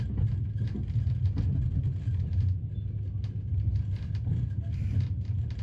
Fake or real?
real